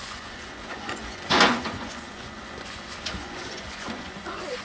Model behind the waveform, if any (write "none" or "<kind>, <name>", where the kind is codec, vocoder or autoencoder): vocoder, Vocos